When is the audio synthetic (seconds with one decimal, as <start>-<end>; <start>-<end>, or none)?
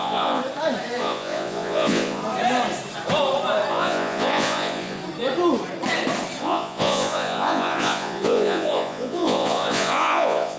0.0-0.4; 1.0-2.2; 3.7-5.0; 6.4-10.6